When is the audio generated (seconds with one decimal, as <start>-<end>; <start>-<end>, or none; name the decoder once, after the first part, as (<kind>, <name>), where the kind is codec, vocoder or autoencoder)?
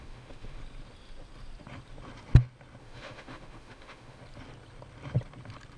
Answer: 0.0-0.6 (autoencoder, DAC-VAE); 2.8-4.2